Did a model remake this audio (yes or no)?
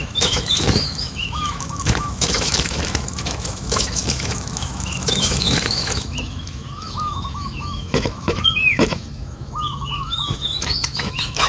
yes